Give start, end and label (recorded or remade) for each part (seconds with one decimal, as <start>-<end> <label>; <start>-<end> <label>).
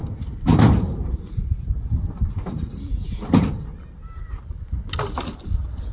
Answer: 0.0-3.5 remade; 3.5-5.9 recorded